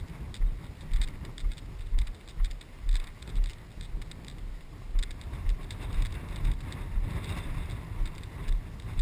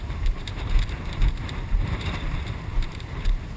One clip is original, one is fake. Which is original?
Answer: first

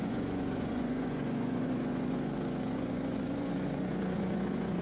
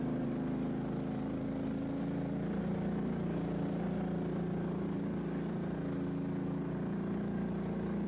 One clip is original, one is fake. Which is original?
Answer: second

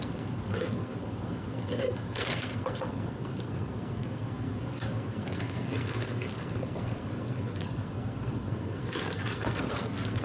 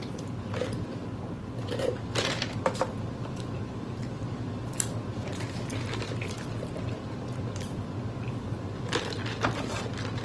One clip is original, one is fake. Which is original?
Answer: second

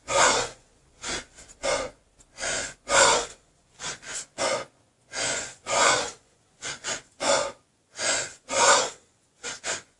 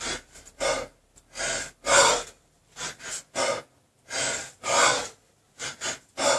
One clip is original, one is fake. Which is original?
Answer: second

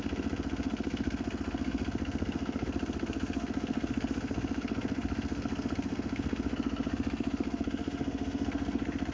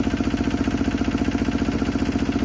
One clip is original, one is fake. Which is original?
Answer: second